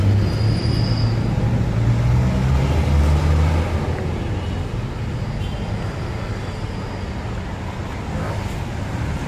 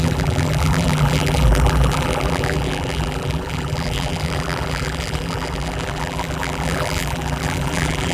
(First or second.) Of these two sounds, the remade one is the second